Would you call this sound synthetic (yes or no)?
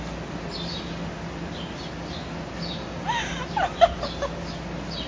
no